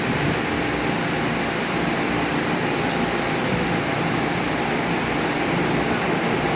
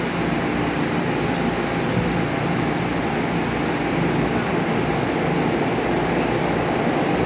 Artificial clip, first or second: first